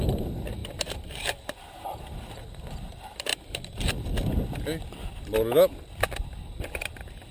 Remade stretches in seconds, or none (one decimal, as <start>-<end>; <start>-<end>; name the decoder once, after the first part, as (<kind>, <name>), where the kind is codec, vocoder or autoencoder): 0.6-2.0 (vocoder, BigVGAN v2); 3.3-3.9